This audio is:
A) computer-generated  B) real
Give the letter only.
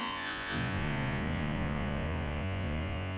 A